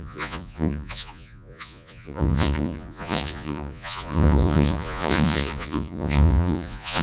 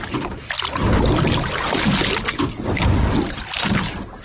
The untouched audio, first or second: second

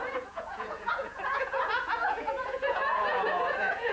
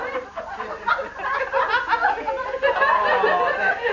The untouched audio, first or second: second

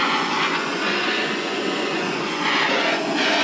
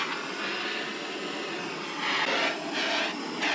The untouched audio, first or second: second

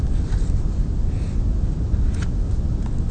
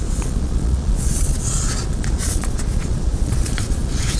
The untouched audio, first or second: first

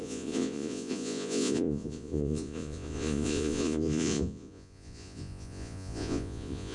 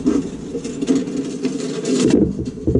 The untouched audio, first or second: second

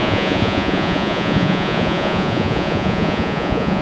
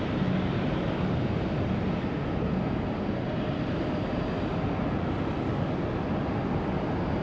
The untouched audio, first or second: second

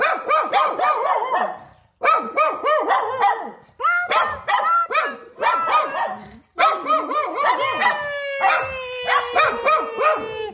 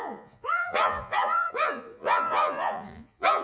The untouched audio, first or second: first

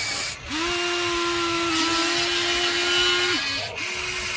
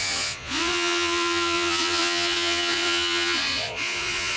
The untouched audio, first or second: first